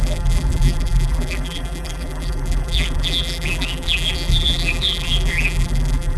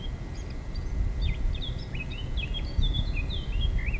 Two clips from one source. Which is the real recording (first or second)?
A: second